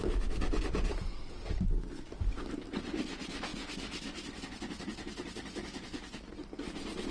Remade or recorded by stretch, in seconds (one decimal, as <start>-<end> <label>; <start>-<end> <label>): 0.0-7.1 recorded